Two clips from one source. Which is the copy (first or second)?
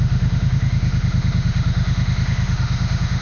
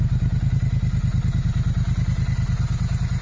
first